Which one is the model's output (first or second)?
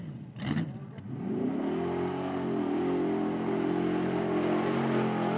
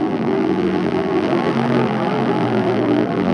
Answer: second